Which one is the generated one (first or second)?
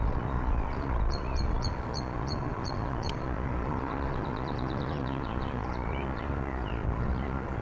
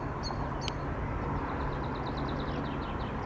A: first